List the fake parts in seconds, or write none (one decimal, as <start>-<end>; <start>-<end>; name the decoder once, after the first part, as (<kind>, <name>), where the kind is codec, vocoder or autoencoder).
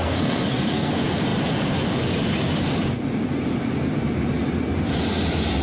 0.0-0.9 (codec, SNAC)